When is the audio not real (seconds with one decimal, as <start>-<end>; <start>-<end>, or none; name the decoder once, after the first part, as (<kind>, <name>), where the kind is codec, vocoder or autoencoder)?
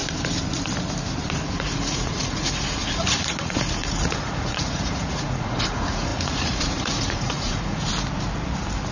1.6-7.9 (vocoder, Vocos)